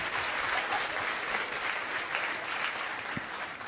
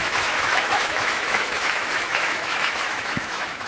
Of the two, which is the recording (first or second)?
first